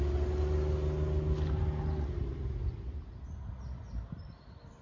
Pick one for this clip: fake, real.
real